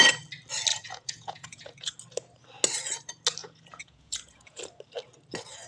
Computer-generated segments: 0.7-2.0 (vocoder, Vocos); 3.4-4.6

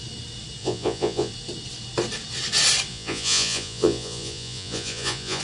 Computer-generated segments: 0.6-1.3 (vocoder, Vocos); 2.9-5.4

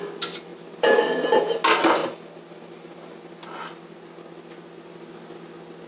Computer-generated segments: none

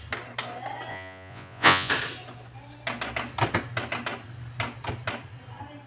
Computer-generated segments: 0.9-1.9 (vocoder, Vocos)

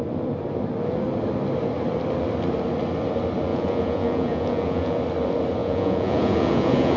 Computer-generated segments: 3.5-5.0 (vocoder, Vocos); 5.6-7.0

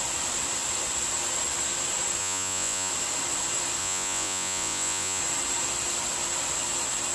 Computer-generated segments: 2.2-2.9 (vocoder, Vocos); 3.8-5.2

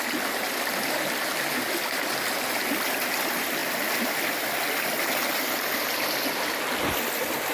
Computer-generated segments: none